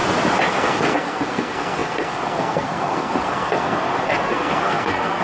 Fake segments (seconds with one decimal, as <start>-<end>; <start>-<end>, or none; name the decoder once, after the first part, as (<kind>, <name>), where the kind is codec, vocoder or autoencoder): 0.5-5.2 (codec, SNAC)